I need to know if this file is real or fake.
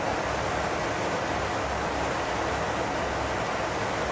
real